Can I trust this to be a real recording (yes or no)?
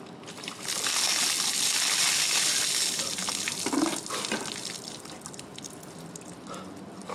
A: yes